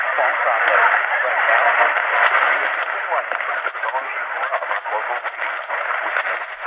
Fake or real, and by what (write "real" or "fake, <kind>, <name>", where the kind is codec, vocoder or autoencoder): real